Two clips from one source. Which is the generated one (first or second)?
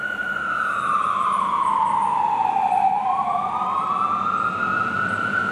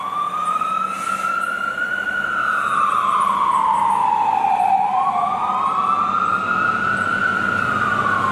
first